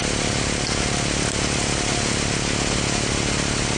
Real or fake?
real